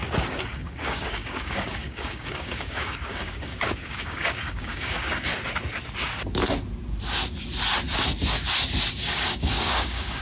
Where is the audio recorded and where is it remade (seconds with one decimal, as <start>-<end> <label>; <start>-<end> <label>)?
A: 0.0-5.3 remade; 5.3-8.9 recorded; 8.9-10.2 remade